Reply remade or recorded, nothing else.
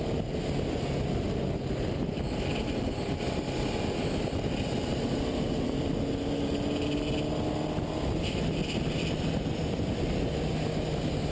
recorded